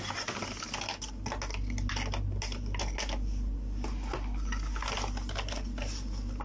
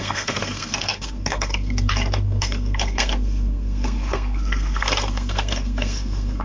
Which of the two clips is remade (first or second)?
second